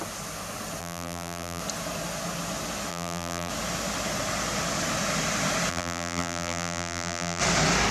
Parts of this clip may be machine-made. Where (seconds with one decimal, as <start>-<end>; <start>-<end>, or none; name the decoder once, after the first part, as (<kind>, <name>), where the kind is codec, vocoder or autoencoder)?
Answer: 0.8-1.6 (vocoder, BigVGAN v2); 2.9-3.5; 5.7-7.4